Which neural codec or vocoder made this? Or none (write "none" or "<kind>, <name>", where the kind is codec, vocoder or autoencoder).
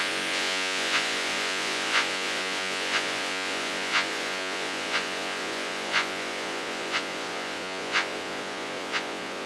vocoder, Vocos